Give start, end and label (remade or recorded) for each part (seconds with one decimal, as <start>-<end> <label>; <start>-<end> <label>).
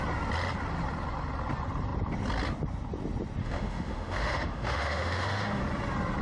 0.0-3.4 recorded; 3.4-5.6 remade; 5.6-6.2 recorded